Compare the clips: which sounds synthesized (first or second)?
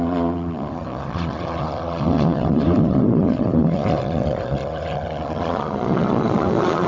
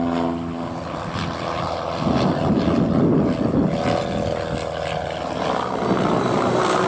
first